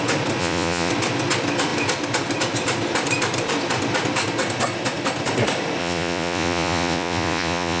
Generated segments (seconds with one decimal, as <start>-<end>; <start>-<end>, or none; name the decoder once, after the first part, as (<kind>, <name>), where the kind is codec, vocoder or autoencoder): 0.4-0.9 (vocoder, Vocos); 5.8-7.8